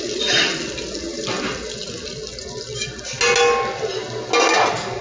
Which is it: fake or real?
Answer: real